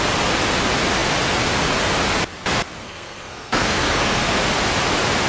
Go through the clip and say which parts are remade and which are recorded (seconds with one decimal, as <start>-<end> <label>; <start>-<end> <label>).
0.0-2.8 recorded; 2.8-4.4 remade; 4.4-5.3 recorded

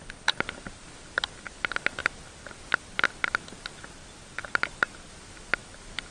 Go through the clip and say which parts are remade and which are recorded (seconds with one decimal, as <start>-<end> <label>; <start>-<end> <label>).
0.0-6.1 recorded

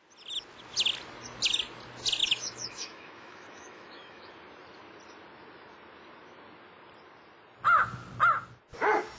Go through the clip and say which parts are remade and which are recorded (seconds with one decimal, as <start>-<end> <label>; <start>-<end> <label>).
0.0-2.2 recorded; 2.2-4.3 remade; 4.3-9.2 recorded